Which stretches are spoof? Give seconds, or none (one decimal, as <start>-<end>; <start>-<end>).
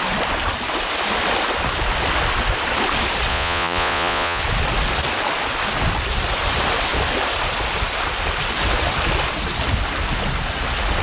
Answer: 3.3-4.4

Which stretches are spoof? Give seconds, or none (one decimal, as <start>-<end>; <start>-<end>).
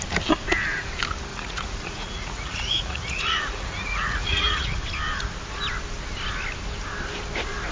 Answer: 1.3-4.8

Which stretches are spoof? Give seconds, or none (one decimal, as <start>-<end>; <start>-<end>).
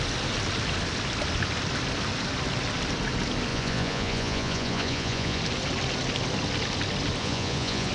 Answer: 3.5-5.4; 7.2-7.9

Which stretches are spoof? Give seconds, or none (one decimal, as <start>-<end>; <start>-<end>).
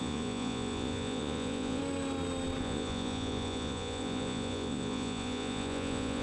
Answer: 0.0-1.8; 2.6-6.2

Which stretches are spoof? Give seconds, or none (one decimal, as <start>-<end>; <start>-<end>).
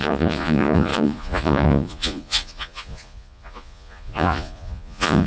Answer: 0.0-5.3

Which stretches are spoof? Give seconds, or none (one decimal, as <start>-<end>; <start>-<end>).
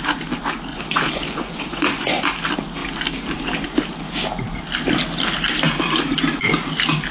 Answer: 0.7-2.2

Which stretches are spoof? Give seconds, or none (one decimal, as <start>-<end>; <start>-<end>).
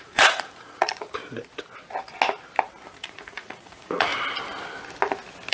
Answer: 0.0-1.2; 2.9-4.1